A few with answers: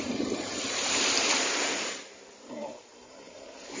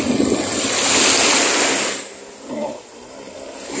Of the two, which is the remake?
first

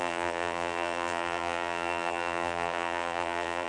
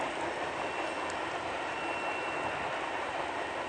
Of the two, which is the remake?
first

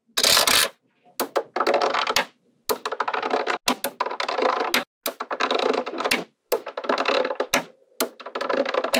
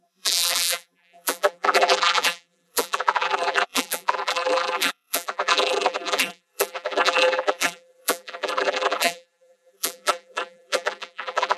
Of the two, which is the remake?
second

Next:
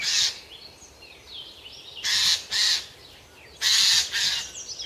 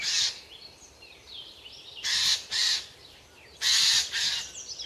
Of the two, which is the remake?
second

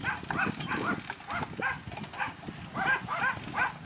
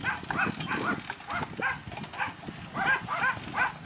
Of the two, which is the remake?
first